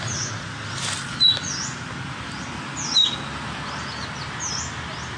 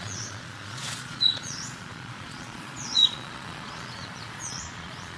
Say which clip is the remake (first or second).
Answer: second